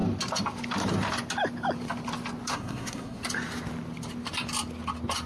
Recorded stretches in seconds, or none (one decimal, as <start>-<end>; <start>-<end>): 0.0-2.5; 3.2-5.3